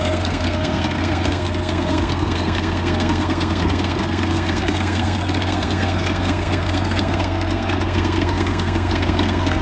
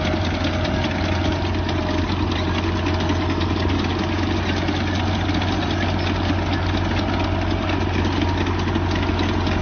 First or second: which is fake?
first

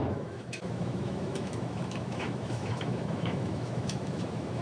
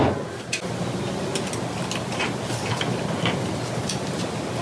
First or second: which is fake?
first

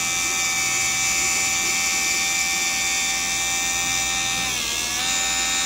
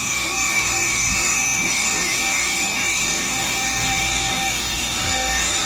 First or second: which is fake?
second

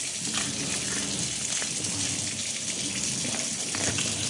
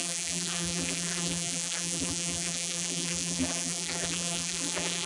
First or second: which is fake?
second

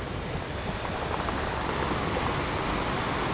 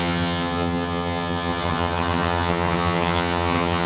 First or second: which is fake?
second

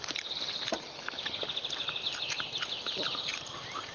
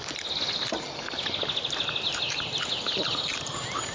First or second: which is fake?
first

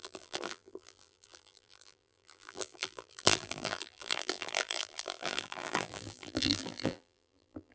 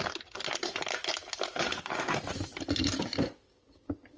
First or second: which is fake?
first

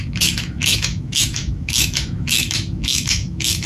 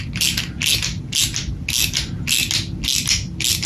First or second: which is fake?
first